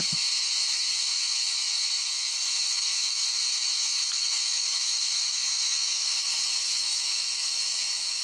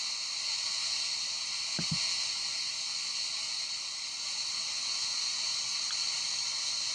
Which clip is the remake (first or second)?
first